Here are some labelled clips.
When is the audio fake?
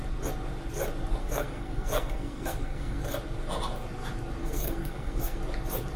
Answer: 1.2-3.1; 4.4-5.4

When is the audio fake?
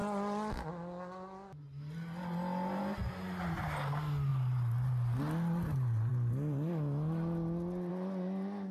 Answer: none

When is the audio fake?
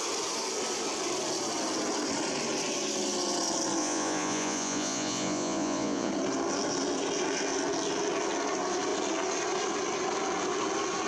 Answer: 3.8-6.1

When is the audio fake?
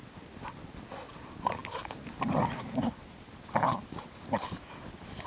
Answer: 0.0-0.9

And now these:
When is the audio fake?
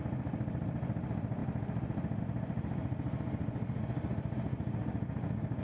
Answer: none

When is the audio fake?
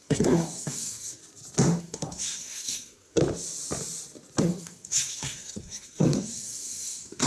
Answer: 0.0-1.2; 1.8-3.2; 4.4-7.3